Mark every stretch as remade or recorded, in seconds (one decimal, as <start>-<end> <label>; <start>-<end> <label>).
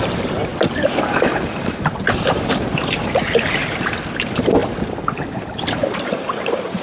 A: 0.0-3.6 remade; 3.6-4.1 recorded; 4.1-4.6 remade; 4.6-5.7 recorded; 5.7-6.8 remade